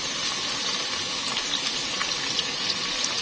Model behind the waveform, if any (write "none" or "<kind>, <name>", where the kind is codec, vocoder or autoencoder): none